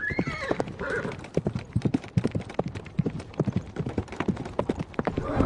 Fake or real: real